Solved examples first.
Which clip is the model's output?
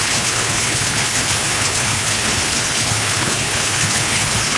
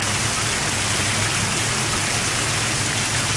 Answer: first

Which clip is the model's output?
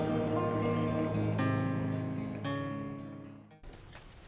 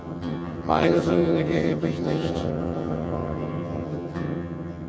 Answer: second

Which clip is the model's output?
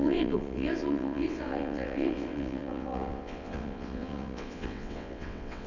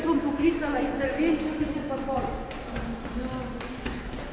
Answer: first